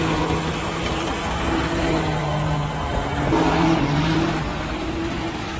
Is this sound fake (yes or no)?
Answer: yes